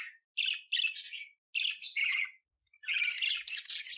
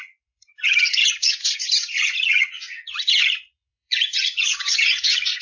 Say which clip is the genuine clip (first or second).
first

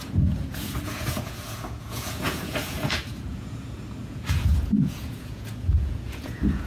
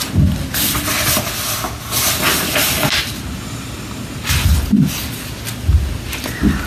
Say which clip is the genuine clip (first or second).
second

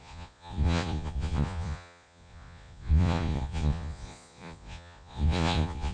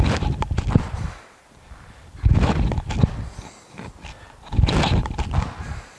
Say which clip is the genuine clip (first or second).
second